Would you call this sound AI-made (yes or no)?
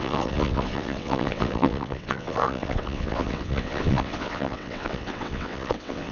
yes